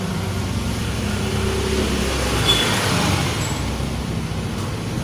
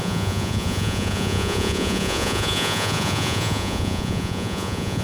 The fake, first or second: second